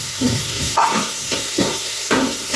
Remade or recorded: remade